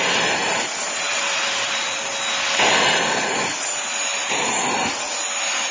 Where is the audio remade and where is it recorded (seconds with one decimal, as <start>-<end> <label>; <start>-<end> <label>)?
0.0-0.4 recorded; 0.4-2.1 remade; 2.1-4.1 recorded; 4.1-5.0 remade; 5.0-5.7 recorded